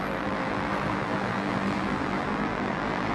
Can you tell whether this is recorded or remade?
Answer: remade